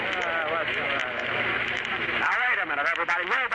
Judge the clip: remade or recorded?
recorded